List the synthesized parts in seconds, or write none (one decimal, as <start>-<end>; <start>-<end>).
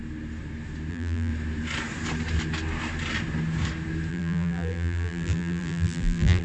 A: 0.9-1.3; 4.1-6.4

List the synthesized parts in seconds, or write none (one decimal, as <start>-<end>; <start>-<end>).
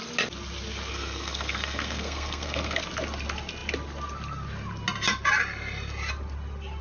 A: 0.9-2.8